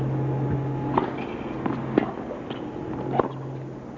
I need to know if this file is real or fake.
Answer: real